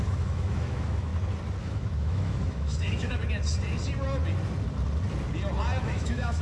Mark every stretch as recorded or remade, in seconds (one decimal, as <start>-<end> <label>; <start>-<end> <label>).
0.0-1.1 remade; 1.1-1.6 recorded; 1.6-3.2 remade; 3.2-5.8 recorded; 5.8-6.4 remade